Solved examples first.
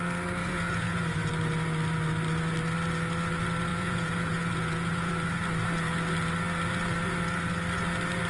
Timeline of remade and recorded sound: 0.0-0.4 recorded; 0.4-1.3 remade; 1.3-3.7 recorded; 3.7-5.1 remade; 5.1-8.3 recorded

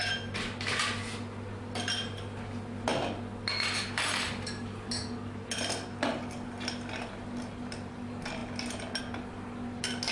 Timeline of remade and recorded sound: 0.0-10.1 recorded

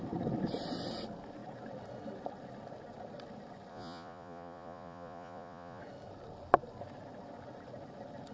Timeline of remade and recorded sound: 0.0-3.7 recorded; 3.7-5.8 remade; 5.8-8.3 recorded

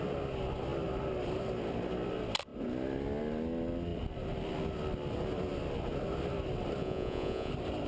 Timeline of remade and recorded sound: 0.0-6.8 recorded; 6.8-7.5 remade; 7.5-7.9 recorded

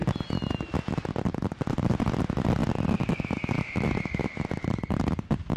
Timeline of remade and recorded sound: 0.0-5.6 recorded